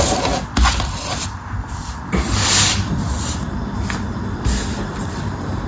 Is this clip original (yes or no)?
yes